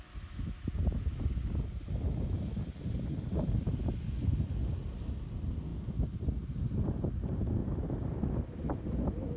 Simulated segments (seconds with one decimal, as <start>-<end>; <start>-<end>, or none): none